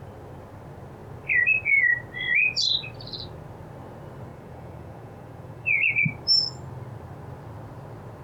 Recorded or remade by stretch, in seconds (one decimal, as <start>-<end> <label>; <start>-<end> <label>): 0.0-4.3 recorded; 4.3-5.9 remade; 5.9-8.2 recorded